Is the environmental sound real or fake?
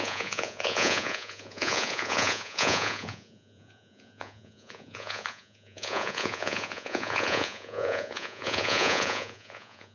fake